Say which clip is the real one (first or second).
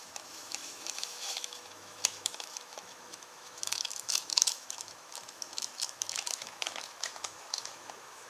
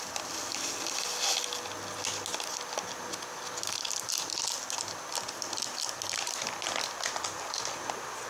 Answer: second